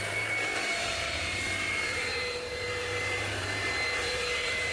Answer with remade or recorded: remade